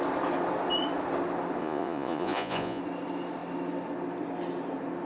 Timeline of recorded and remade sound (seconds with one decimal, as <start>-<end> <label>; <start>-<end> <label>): 0.0-1.6 recorded; 1.6-2.8 remade; 2.8-5.1 recorded